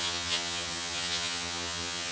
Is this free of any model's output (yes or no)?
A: no